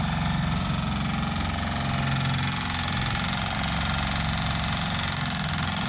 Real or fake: real